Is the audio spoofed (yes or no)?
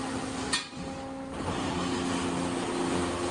no